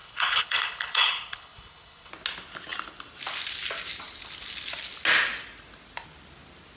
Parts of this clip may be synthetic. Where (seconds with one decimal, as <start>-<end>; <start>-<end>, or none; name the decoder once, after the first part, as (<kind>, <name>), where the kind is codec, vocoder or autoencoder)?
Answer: 0.0-2.1 (codec, HILCodec)